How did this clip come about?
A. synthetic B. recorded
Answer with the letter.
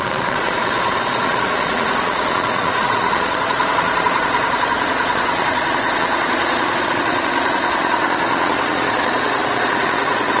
A